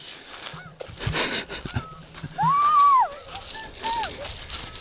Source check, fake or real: real